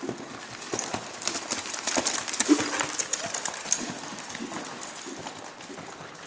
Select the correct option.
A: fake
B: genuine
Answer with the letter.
B